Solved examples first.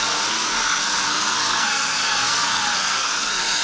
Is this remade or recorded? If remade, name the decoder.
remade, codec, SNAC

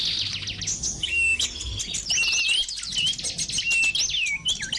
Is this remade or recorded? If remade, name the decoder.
recorded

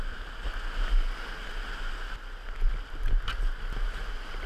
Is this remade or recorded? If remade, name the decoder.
recorded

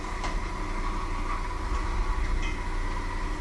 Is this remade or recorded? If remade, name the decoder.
recorded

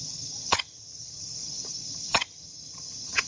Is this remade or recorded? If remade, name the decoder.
remade, vocoder, HiFi-GAN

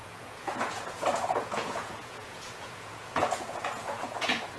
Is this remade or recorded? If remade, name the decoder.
remade, vocoder, Vocos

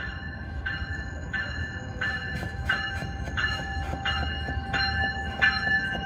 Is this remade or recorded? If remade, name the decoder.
remade, autoencoder, DAC-VAE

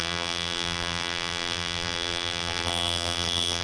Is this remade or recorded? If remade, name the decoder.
remade, vocoder, BigVGAN v2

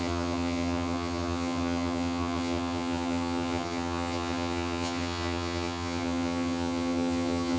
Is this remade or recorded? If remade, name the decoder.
remade, vocoder, HiFi-GAN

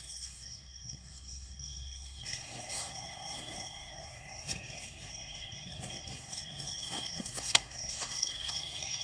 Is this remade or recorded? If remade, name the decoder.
remade, codec, SNAC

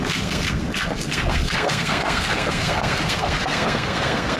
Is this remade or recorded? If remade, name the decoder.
remade, codec, SNAC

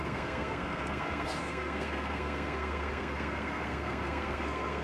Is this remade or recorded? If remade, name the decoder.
remade, codec, SNAC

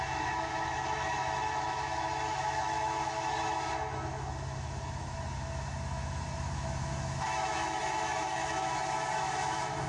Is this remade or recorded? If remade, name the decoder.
remade, autoencoder, DAC-VAE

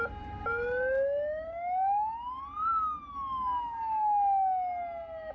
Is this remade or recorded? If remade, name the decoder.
recorded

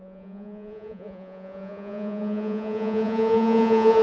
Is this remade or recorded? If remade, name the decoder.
remade, vocoder, Vocos